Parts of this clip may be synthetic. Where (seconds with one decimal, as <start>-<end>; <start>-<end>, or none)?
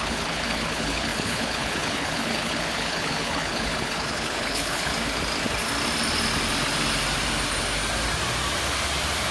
0.0-4.9